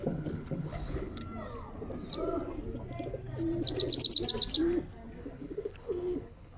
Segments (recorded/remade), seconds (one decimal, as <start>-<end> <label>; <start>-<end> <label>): 0.0-1.2 remade; 1.2-5.2 recorded; 5.2-6.6 remade